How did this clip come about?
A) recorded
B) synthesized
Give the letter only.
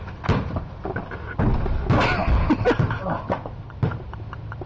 A